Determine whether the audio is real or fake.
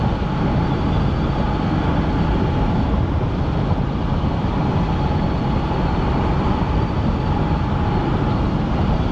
real